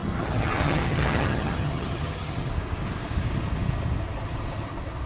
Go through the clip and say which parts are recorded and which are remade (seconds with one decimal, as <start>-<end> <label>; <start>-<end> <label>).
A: 0.0-2.5 remade; 2.5-5.1 recorded